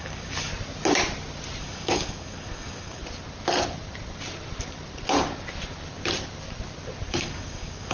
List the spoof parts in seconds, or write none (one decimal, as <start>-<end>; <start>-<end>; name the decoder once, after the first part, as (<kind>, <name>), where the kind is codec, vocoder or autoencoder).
0.0-0.5 (codec, DAC); 1.6-3.0; 7.1-7.9